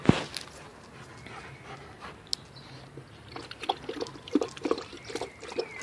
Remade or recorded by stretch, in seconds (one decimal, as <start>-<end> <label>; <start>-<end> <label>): 0.0-5.8 recorded